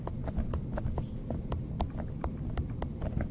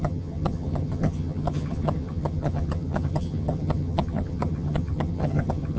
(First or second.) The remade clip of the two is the second